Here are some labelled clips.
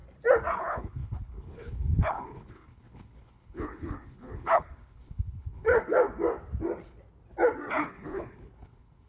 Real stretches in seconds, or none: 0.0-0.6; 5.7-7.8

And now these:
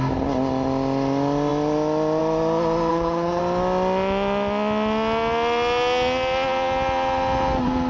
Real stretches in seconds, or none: 0.0-2.9; 3.4-7.9